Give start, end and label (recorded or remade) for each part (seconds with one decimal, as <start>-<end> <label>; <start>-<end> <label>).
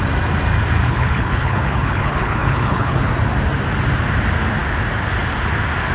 0.0-0.8 recorded; 0.8-3.1 remade; 3.1-5.9 recorded